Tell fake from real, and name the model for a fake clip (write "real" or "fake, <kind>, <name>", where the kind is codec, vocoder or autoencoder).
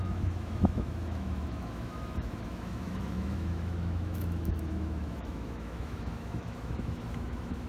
fake, autoencoder, DAC-VAE